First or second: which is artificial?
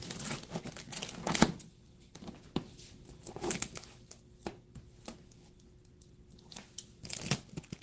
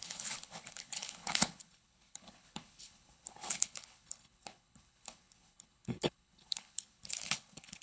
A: second